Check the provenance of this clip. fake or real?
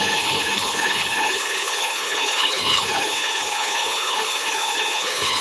fake